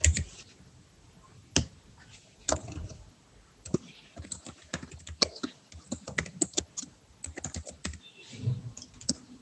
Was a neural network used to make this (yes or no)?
no